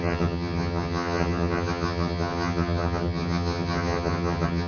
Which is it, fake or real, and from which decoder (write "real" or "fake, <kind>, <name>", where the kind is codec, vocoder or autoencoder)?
fake, vocoder, HiFi-GAN